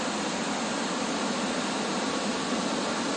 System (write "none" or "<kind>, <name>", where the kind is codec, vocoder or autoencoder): none